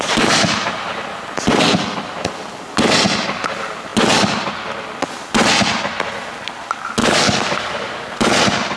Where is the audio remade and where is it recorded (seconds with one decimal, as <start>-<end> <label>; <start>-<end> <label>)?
0.0-7.0 recorded; 7.0-8.1 remade; 8.1-8.8 recorded

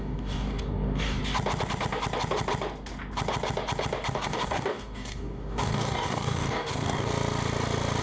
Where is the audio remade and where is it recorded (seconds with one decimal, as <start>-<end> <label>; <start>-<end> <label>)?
0.0-1.2 remade; 1.2-4.1 recorded; 4.1-7.1 remade; 7.1-8.0 recorded

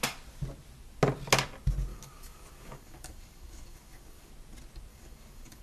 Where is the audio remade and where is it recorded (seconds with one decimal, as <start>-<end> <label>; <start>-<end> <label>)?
0.0-1.9 recorded; 1.9-4.3 remade; 4.3-4.9 recorded; 4.9-5.6 remade

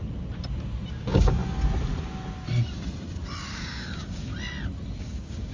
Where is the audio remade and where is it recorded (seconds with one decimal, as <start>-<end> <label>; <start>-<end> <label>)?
0.0-0.9 recorded; 0.9-1.4 remade; 1.4-3.5 recorded; 3.5-4.3 remade; 4.3-5.0 recorded; 5.0-5.5 remade

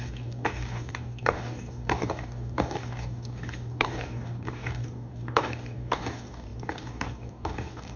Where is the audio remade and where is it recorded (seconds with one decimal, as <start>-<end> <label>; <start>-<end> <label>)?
0.0-8.0 remade

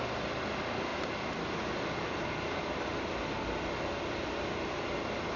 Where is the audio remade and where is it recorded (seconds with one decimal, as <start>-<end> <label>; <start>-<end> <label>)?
0.0-5.4 recorded

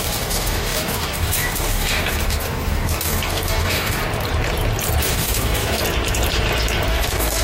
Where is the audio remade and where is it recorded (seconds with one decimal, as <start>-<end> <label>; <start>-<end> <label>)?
0.0-4.0 remade; 4.0-5.0 recorded; 5.0-5.8 remade; 5.8-6.9 recorded; 6.9-7.4 remade